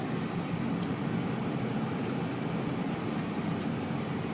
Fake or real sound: fake